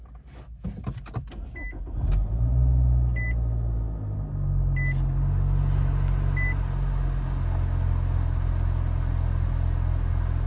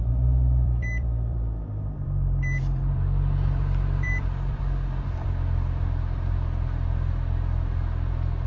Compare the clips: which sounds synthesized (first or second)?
second